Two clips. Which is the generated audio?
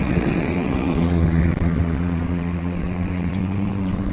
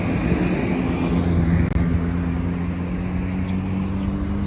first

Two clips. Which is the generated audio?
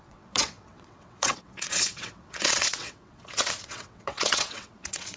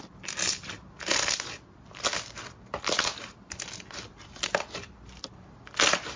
first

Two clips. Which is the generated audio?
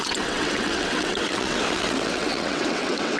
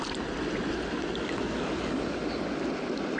first